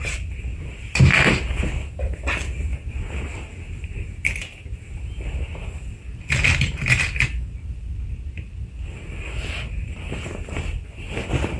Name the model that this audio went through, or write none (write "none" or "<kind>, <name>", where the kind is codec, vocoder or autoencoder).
none